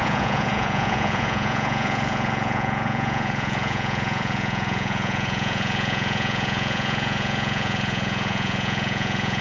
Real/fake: fake